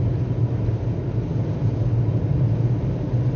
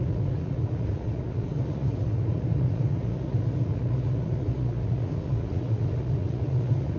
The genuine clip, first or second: first